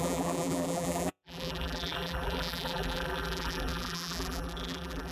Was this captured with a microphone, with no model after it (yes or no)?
no